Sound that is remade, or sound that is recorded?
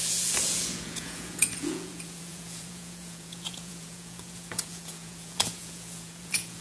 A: remade